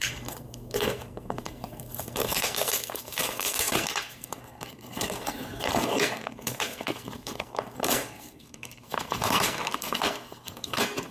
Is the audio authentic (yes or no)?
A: no